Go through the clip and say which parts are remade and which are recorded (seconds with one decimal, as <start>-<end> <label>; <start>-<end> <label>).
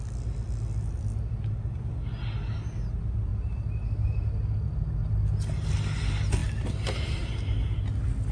0.0-8.3 recorded